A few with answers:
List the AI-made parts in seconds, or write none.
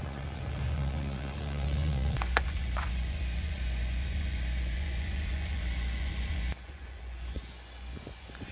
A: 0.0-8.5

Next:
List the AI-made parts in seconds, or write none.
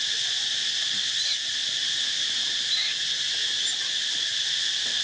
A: none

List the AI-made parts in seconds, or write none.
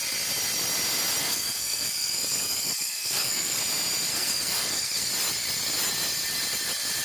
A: 1.2-3.6; 4.1-5.1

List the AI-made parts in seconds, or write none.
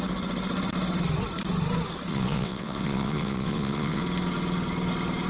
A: 2.1-4.0